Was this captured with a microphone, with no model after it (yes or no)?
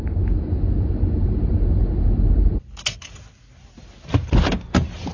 yes